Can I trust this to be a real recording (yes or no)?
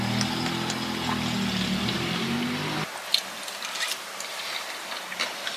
yes